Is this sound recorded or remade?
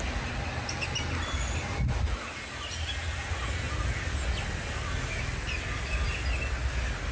recorded